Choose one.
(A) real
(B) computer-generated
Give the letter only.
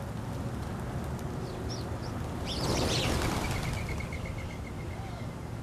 A